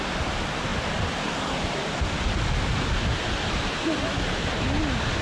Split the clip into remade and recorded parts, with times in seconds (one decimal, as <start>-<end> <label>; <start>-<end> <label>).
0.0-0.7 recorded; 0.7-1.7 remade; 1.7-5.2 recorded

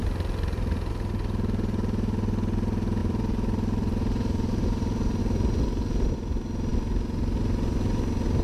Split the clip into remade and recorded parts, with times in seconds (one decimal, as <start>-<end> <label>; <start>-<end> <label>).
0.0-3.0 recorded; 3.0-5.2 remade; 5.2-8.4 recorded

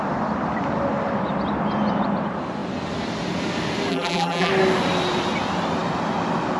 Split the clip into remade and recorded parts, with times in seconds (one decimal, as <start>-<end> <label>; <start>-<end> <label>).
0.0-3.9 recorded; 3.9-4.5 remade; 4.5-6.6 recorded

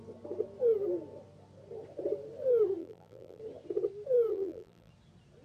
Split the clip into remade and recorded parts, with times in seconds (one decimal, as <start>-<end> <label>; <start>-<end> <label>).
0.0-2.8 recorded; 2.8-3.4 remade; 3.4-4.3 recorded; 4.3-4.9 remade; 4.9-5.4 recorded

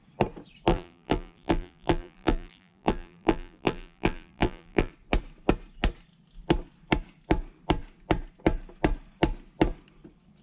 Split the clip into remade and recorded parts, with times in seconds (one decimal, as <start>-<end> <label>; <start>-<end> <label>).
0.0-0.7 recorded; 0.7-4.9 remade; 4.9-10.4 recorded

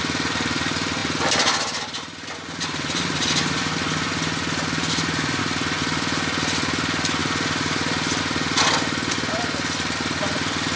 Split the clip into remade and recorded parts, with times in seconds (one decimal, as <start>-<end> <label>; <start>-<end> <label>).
0.0-7.2 recorded; 7.2-8.2 remade; 8.2-10.8 recorded